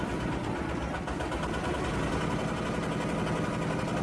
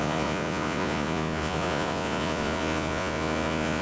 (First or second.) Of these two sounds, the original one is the first